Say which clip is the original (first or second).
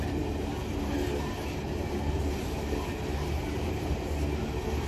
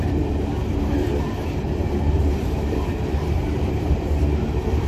first